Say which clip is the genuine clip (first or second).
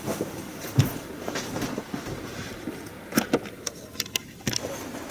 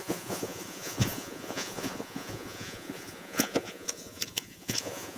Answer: first